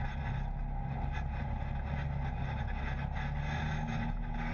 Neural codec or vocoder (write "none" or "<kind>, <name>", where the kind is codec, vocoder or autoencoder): none